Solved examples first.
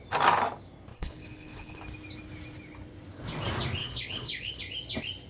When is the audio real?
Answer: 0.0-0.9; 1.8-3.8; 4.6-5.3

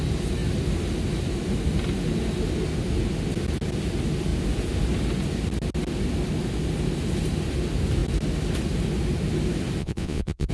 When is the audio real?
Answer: 0.0-9.8

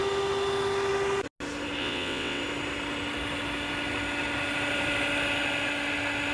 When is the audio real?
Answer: 0.0-1.8; 2.4-6.3

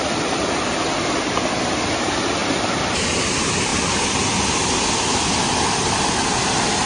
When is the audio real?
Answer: 0.0-6.9

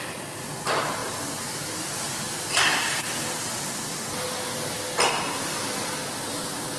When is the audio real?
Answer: 0.0-6.8

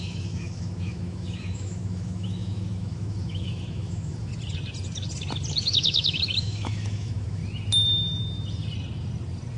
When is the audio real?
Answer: 4.3-5.6; 7.4-9.6

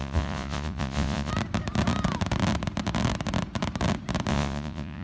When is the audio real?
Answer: 1.3-4.3